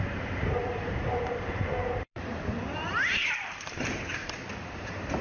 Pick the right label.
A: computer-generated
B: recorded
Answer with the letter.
A